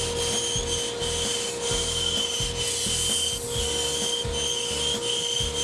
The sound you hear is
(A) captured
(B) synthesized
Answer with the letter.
A